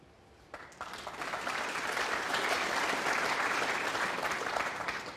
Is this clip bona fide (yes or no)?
yes